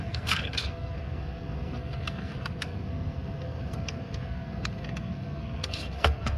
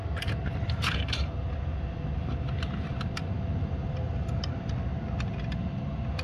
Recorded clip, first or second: second